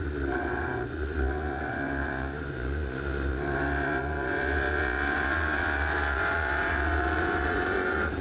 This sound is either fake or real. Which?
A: fake